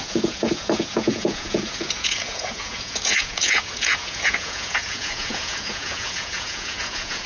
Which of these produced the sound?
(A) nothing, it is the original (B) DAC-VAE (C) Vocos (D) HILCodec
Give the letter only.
C